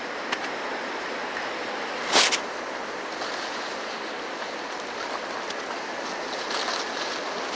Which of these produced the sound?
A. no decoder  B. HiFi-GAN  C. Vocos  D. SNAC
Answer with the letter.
A